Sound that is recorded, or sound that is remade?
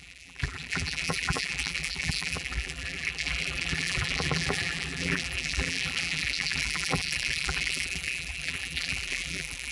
remade